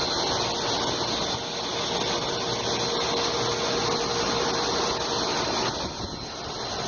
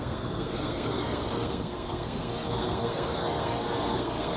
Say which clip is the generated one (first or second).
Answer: second